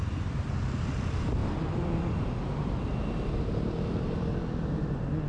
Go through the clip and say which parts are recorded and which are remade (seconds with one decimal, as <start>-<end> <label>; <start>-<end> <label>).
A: 0.0-1.4 recorded; 1.4-4.4 remade; 4.4-5.3 recorded